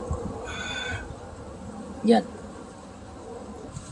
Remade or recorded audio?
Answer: recorded